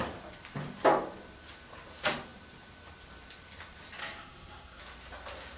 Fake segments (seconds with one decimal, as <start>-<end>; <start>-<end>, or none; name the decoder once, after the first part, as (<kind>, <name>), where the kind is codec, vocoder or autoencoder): 4.0-4.8 (codec, SNAC)